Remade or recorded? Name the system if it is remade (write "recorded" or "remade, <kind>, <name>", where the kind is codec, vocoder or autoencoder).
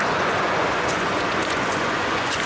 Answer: remade, vocoder, Vocos